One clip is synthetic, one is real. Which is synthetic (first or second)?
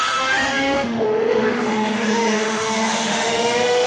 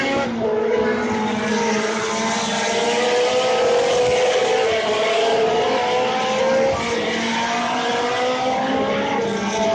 first